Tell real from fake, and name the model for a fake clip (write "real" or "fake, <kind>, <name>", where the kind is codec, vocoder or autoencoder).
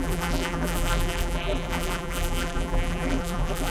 fake, vocoder, BigVGAN v2